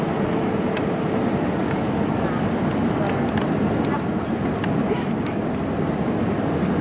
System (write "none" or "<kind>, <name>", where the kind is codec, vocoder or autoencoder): none